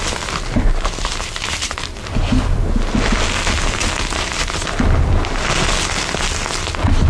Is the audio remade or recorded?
recorded